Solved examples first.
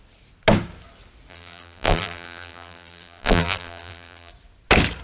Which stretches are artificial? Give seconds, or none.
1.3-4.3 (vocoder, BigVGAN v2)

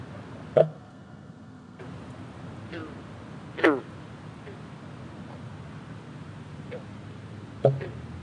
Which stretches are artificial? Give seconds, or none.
0.6-1.8 (codec, SNAC)

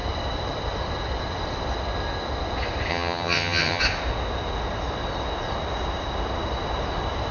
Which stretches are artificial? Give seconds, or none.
2.9-3.8 (vocoder, HiFi-GAN)

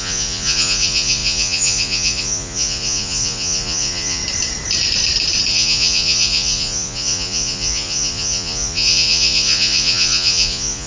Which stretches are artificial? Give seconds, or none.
0.0-4.2 (vocoder, Vocos); 5.5-10.9

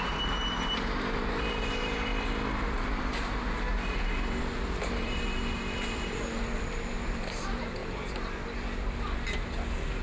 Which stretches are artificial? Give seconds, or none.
0.0-2.1 (vocoder, BigVGAN v2); 4.4-7.8

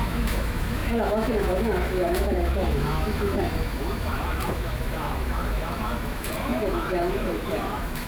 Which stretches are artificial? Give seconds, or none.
0.0-8.1 (autoencoder, DAC-VAE)